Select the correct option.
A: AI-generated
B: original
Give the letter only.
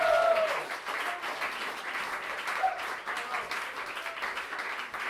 B